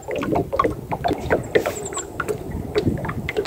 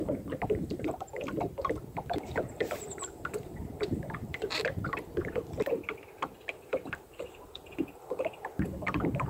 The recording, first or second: first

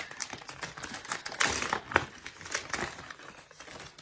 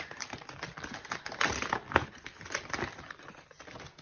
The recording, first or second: first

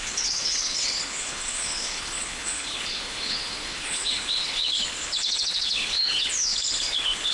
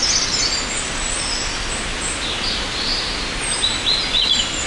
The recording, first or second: second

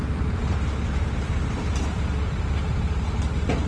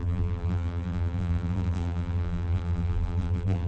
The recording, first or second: first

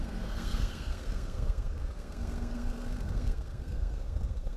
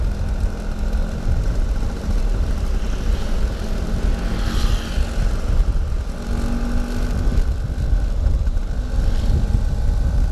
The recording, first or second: second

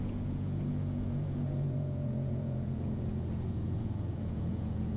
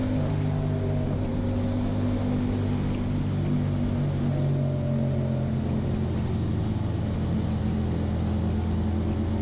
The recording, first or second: second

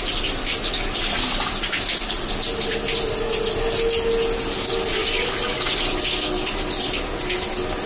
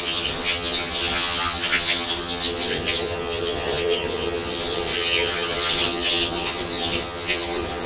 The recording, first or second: first